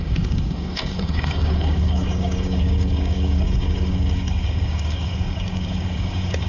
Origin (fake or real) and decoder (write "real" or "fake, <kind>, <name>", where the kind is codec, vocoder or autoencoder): fake, codec, DAC